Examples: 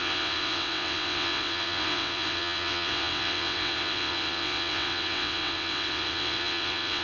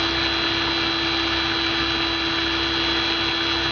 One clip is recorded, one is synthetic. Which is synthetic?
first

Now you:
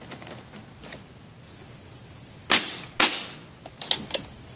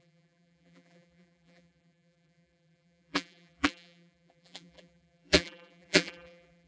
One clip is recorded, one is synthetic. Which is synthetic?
second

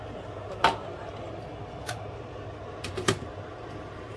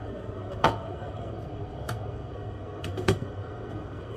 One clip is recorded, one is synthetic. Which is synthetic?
second